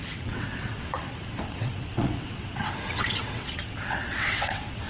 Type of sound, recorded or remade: remade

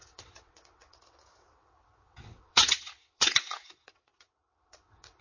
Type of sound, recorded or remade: remade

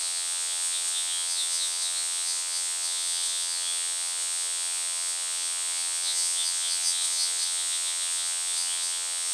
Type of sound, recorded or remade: remade